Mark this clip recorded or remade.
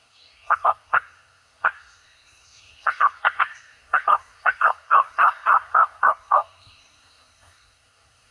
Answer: remade